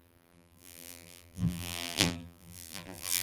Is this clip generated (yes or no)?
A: yes